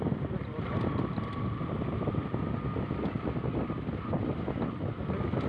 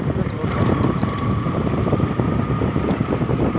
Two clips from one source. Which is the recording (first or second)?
first